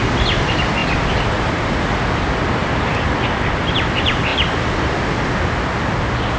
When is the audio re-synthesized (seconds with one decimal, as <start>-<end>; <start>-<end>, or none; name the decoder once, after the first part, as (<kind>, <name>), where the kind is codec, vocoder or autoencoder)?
none

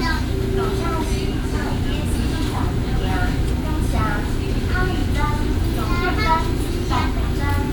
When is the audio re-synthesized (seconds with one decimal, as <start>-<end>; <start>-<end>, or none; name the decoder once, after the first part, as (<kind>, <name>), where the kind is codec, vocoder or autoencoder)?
none

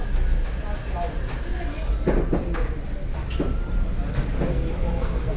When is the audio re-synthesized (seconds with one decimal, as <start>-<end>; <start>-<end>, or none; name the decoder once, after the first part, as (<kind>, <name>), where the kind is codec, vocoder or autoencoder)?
4.5-5.4 (codec, SNAC)

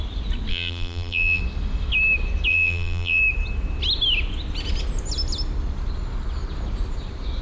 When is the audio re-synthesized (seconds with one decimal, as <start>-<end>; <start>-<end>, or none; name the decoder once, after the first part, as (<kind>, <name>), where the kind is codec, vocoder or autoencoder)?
0.5-1.4 (vocoder, BigVGAN v2); 2.5-3.2

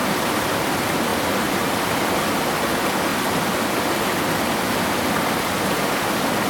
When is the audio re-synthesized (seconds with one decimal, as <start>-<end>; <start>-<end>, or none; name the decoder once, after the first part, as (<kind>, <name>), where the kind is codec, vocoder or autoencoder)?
0.0-0.7 (vocoder, BigVGAN v2); 1.1-2.4

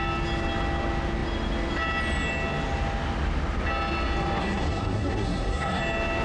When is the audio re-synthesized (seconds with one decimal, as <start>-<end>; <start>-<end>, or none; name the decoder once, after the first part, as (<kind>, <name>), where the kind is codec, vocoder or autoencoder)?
4.4-5.8 (codec, SNAC)

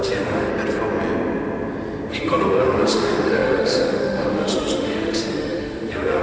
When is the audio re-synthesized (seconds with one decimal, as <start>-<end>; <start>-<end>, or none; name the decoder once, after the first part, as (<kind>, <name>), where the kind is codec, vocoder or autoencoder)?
0.0-0.5 (autoencoder, DAC-VAE); 2.1-6.2

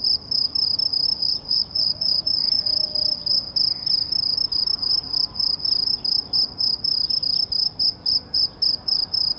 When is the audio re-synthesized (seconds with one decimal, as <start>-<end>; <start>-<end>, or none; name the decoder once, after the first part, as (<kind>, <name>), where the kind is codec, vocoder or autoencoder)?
1.2-2.6 (vocoder, Vocos)